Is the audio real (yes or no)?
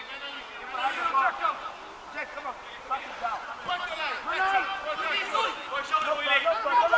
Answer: yes